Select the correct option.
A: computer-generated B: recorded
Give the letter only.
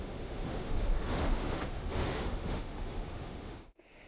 A